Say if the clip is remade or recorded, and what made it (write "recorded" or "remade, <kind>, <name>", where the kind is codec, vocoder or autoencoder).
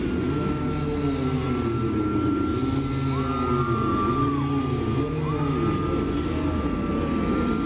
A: recorded